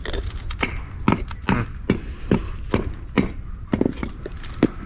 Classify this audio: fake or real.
real